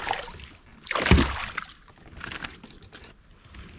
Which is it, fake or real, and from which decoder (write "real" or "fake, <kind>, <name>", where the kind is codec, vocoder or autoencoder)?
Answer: real